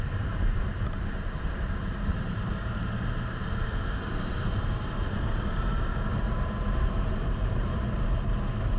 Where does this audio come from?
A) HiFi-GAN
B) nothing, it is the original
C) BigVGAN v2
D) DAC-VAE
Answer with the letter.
C